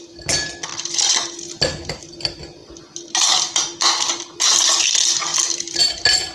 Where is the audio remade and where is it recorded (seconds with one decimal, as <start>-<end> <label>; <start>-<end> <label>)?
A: 0.0-6.3 recorded